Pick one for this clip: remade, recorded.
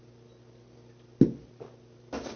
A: recorded